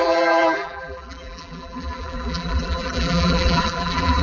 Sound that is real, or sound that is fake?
fake